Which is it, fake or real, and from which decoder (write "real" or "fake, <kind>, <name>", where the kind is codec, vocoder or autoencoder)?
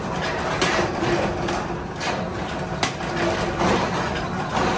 real